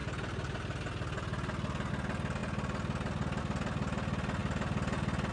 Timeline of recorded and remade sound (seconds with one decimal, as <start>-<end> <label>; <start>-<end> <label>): 0.0-5.3 recorded